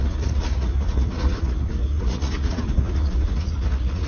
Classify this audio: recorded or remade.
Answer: remade